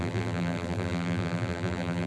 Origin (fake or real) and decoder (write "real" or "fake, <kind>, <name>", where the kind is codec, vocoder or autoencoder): fake, vocoder, BigVGAN v2